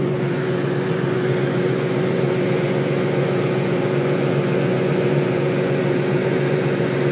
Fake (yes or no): yes